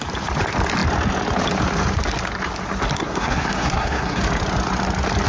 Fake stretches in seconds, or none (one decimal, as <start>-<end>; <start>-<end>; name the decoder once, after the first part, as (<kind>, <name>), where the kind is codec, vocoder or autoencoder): 2.9-4.2 (codec, SNAC)